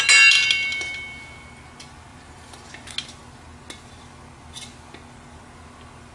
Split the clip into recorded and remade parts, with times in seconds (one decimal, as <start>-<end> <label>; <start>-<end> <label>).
0.0-2.1 recorded; 2.1-2.7 remade; 2.7-6.1 recorded